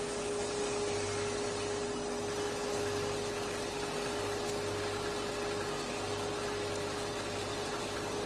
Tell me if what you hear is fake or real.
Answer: real